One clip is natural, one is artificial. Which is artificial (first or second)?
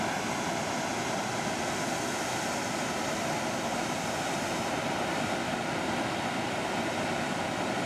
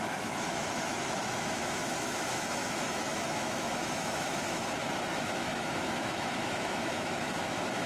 second